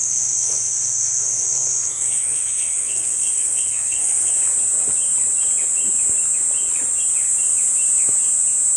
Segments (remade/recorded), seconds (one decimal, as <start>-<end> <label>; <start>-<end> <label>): 0.0-4.3 remade; 4.3-8.8 recorded